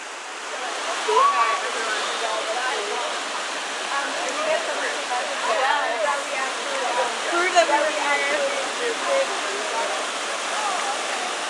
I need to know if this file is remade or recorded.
recorded